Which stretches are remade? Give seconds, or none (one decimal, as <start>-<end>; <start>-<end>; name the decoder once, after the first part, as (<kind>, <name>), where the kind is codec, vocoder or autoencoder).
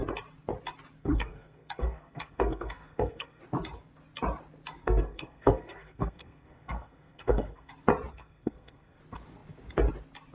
1.0-3.4 (codec, SNAC); 4.8-7.7; 8.1-9.0